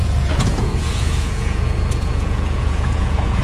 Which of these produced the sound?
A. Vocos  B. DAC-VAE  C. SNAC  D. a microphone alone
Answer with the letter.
A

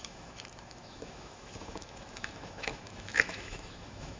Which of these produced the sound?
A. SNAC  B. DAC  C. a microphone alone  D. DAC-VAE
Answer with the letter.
D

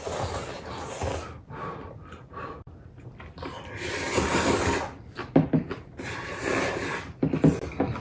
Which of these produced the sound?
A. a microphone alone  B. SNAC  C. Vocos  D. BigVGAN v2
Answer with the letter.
A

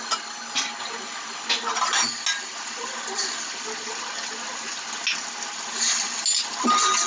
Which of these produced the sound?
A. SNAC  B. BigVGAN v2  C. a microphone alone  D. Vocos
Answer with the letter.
C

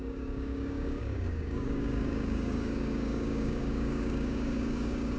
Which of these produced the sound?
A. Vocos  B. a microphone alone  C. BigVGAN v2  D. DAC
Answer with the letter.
D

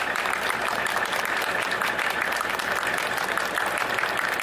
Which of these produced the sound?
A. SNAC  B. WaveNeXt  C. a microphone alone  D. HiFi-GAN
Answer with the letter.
C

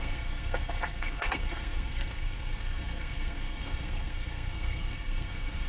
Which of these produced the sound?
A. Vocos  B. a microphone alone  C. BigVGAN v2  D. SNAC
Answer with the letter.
D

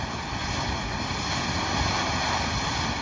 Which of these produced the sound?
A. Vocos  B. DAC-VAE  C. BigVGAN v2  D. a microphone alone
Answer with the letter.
D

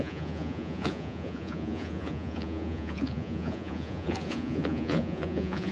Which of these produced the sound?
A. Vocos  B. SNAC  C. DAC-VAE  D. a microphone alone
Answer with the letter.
A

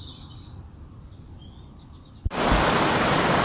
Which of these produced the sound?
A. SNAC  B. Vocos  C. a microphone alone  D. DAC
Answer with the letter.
C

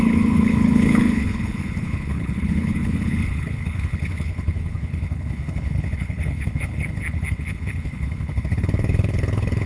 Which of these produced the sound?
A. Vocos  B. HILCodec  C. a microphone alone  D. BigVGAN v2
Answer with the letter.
B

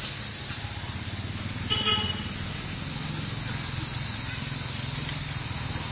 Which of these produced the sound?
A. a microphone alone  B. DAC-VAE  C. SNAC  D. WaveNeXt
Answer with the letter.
A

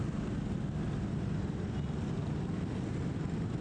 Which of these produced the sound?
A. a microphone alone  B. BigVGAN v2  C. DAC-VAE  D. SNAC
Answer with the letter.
A